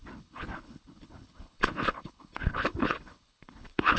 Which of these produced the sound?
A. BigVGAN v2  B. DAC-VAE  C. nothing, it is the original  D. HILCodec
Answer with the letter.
D